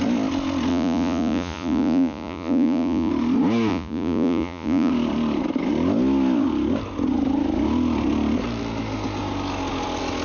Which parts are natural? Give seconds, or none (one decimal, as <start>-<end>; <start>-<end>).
0.0-0.7; 3.1-3.7; 4.9-10.2